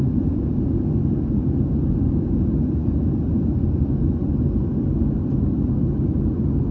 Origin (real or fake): real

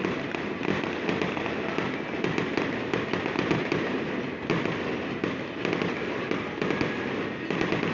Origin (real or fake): real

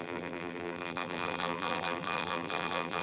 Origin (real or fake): fake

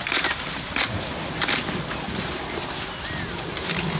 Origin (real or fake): real